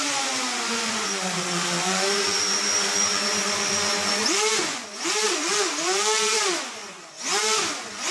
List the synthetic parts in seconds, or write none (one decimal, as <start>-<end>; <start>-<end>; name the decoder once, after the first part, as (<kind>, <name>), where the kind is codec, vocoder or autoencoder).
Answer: 0.0-8.1 (vocoder, Vocos)